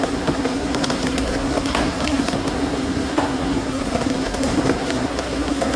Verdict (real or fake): fake